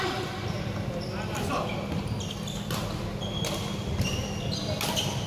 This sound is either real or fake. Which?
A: real